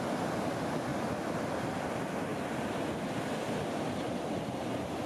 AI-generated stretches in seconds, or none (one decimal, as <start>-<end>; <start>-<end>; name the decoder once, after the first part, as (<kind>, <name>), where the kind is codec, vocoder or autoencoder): 0.9-1.6 (vocoder, BigVGAN v2)